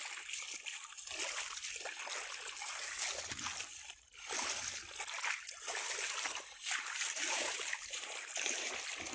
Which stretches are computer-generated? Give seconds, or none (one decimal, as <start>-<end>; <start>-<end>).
6.6-8.7